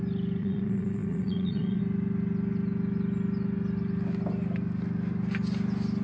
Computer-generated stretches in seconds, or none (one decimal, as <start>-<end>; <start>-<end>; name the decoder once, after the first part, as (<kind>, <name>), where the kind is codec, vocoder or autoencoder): 0.4-1.8 (vocoder, Vocos)